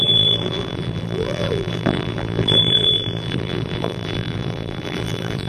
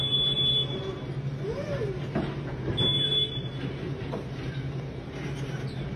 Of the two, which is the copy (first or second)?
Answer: first